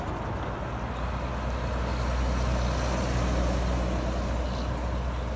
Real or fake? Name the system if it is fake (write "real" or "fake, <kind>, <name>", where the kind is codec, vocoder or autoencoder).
real